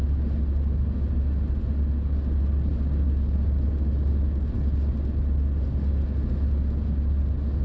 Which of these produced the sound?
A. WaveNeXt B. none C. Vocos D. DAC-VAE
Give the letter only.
B